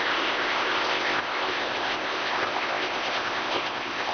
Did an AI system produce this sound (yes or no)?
yes